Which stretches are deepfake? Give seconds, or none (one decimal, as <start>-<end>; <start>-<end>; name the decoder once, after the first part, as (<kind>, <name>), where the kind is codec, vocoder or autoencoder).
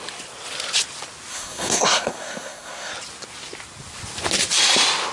1.3-2.9 (codec, SNAC)